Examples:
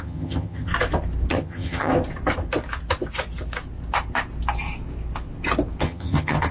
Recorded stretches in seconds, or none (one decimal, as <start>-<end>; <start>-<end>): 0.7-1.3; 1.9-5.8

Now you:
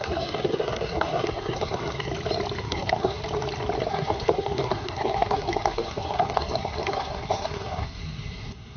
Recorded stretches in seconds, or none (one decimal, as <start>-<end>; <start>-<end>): 2.1-2.6; 3.2-3.9

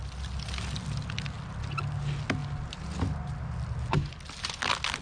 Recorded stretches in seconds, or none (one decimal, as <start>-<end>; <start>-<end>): 0.0-5.0